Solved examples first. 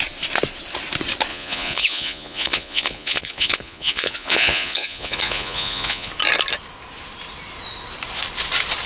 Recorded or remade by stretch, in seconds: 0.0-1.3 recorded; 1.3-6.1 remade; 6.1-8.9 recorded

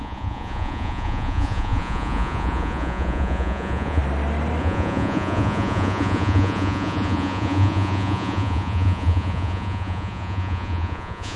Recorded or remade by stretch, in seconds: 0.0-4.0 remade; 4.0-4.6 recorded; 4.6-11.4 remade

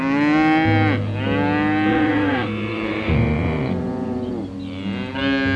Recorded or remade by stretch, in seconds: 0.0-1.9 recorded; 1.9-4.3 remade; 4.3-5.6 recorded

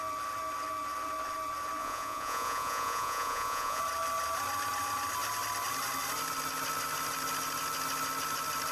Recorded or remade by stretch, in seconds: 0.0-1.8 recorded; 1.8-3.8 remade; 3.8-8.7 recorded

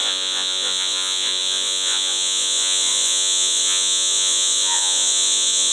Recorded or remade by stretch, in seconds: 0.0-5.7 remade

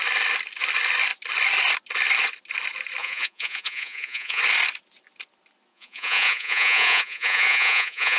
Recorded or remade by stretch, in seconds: 0.0-3.0 recorded; 3.0-4.4 remade; 4.4-5.7 recorded; 5.7-8.2 remade

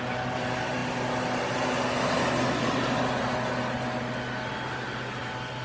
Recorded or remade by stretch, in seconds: 0.0-5.6 recorded